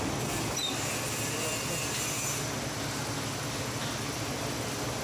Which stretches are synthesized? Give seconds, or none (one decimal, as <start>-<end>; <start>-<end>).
none